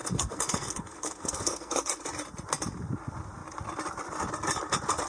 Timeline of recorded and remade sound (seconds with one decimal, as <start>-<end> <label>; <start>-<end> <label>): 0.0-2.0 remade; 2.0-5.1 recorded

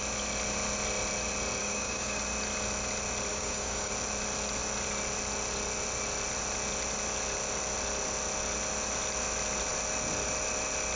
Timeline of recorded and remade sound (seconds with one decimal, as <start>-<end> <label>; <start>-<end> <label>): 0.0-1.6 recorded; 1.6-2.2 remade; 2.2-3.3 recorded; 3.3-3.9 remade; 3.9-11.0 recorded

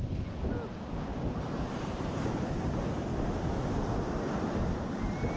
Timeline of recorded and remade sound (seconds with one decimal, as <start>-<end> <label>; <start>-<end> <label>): 0.0-1.1 recorded; 1.1-2.3 remade; 2.3-5.4 recorded

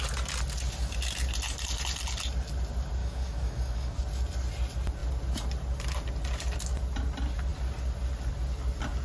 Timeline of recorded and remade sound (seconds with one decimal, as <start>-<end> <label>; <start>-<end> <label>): 0.0-3.0 recorded; 3.0-4.0 remade; 4.0-9.0 recorded

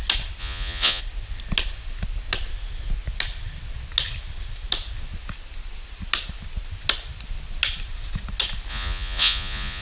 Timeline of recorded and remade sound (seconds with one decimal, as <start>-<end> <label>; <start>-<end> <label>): 0.0-0.4 recorded; 0.4-1.0 remade; 1.0-8.7 recorded; 8.7-9.8 remade

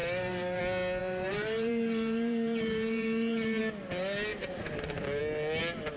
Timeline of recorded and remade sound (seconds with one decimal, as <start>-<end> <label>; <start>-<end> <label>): 0.0-0.6 remade; 0.6-1.0 recorded; 1.0-3.6 remade; 3.6-4.3 recorded; 4.3-5.2 remade; 5.2-6.0 recorded